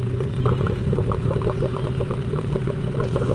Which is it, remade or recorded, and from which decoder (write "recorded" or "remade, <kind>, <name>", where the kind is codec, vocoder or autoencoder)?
remade, vocoder, Vocos